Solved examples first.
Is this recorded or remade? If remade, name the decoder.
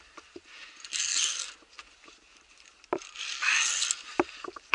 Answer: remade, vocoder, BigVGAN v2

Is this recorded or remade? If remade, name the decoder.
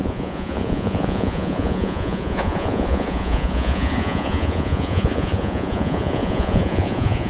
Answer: remade, vocoder, Vocos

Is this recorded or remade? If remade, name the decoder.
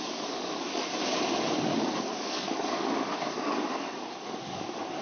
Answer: remade, codec, DAC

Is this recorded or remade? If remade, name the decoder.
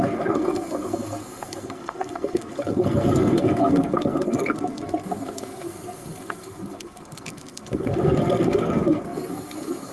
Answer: remade, codec, SNAC